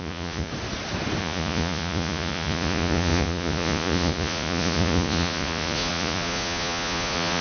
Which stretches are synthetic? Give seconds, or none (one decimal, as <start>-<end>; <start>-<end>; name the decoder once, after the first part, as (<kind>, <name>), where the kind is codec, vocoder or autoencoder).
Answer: 0.0-0.5 (vocoder, Vocos); 1.2-7.4